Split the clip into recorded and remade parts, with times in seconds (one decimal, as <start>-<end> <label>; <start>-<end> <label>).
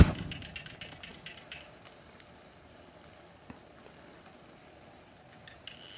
0.0-6.0 recorded